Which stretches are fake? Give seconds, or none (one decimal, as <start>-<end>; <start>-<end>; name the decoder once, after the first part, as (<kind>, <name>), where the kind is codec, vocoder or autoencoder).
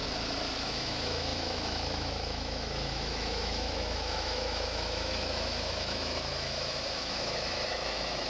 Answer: 0.6-8.3 (autoencoder, DAC-VAE)